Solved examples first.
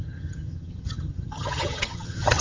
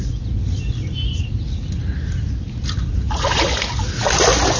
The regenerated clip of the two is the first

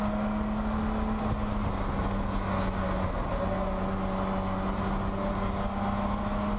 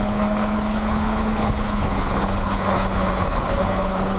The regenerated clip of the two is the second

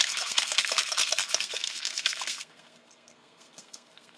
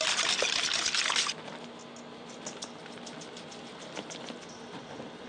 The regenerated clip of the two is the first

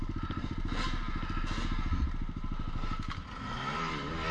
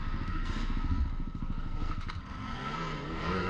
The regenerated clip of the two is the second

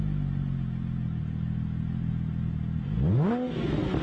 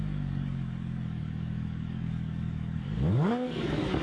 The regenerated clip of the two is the second